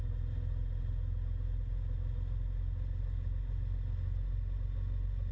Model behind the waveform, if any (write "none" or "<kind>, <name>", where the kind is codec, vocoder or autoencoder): none